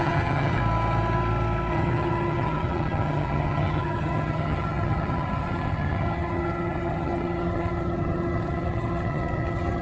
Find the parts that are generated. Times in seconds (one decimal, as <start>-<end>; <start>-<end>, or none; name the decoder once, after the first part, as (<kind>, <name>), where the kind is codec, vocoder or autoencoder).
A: 0.0-0.6 (vocoder, HiFi-GAN); 1.7-9.8

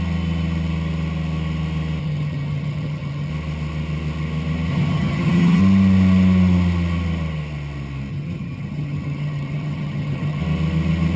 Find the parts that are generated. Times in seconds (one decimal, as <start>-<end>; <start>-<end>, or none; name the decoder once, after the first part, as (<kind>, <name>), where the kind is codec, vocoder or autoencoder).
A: 2.0-3.3 (vocoder, HiFi-GAN); 4.7-5.6; 8.1-10.4

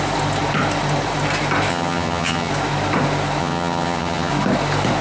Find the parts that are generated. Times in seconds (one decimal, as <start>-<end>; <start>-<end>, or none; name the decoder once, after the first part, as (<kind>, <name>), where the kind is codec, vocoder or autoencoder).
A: 1.7-2.5 (vocoder, HiFi-GAN); 3.4-4.3